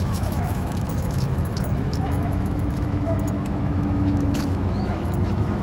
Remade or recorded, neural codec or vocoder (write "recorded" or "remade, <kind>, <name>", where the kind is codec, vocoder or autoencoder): remade, autoencoder, DAC-VAE